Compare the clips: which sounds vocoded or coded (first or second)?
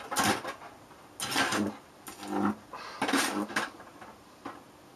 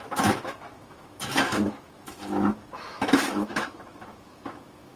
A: second